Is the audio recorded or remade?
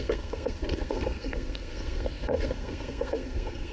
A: remade